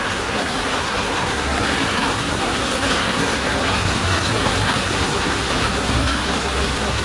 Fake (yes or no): yes